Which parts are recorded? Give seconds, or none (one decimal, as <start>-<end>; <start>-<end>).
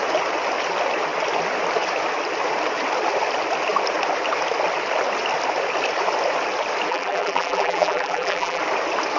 0.0-6.9; 8.6-9.2